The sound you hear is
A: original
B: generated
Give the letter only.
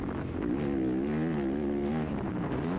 A